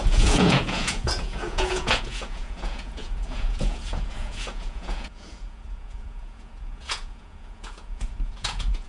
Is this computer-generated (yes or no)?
yes